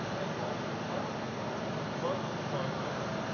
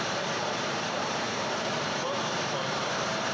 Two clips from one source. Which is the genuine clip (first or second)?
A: first